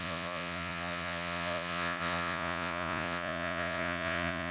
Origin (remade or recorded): remade